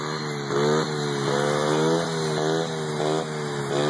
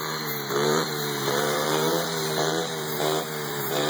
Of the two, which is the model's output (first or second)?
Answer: second